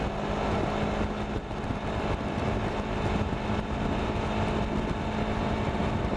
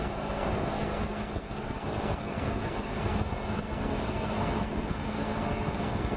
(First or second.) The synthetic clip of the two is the second